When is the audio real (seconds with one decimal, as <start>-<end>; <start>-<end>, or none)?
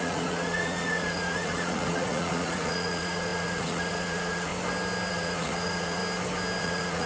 4.5-5.1; 6.0-6.6